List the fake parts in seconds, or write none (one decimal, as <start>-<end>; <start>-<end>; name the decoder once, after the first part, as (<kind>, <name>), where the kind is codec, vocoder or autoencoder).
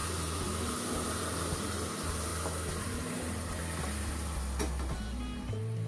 0.0-2.3 (vocoder, BigVGAN v2); 2.8-3.6; 4.6-5.9